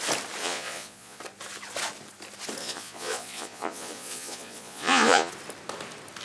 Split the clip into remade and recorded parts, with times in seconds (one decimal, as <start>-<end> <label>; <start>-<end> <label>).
0.0-0.4 recorded; 0.4-1.2 remade; 1.2-2.6 recorded; 2.6-5.3 remade; 5.3-6.2 recorded